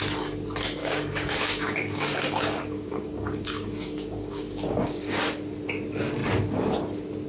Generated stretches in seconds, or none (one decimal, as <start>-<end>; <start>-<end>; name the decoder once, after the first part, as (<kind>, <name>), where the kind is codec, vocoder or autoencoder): 0.8-5.2 (codec, DAC)